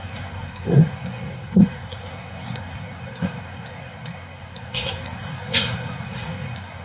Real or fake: fake